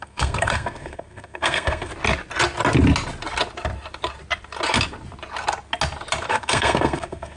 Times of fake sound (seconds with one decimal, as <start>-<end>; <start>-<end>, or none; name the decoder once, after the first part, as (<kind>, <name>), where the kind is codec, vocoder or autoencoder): 0.0-1.9 (codec, SNAC); 6.3-7.4